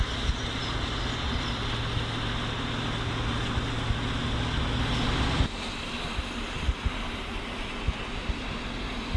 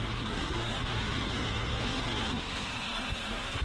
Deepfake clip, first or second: second